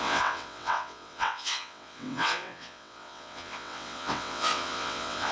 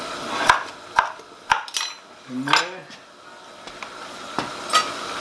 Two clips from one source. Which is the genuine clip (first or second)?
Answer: second